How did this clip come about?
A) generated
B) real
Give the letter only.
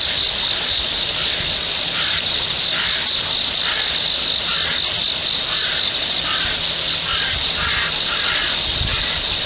B